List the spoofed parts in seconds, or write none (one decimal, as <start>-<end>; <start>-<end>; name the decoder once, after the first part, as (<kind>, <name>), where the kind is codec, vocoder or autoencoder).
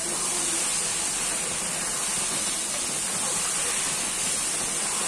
none